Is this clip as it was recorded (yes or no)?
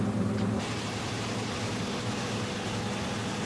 yes